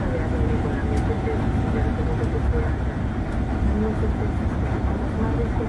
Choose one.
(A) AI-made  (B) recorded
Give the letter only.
B